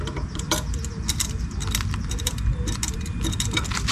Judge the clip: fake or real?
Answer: fake